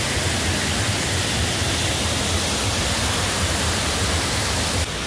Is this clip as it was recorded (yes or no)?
yes